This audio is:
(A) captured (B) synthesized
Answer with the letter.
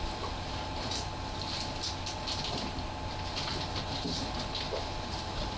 A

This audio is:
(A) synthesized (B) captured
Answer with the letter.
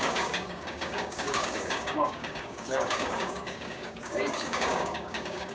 A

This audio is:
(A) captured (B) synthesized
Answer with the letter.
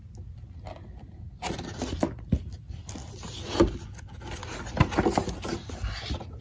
A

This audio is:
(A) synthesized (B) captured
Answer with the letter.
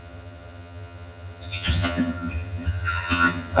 A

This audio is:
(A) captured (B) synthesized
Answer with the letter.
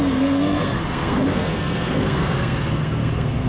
B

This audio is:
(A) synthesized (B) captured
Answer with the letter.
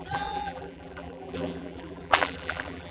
A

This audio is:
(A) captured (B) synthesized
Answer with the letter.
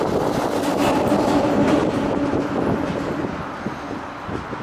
A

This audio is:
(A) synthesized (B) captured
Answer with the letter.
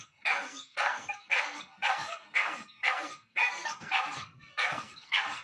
A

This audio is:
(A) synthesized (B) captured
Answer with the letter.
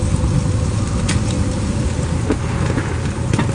B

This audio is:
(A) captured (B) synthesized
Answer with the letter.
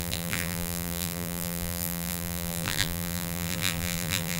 B